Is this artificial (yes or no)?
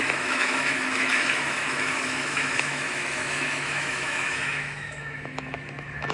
yes